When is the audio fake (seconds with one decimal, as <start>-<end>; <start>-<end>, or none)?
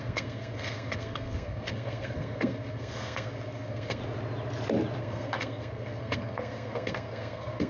0.0-4.0; 5.0-7.7